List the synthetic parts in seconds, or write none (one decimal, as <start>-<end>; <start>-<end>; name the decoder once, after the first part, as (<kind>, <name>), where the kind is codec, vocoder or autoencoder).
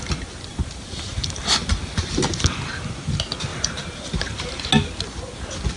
0.5-2.1 (vocoder, BigVGAN v2); 3.5-4.6